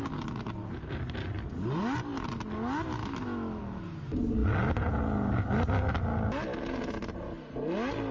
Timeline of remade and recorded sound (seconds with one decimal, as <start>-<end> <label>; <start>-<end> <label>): 0.0-3.0 recorded; 3.0-3.6 remade; 3.6-8.1 recorded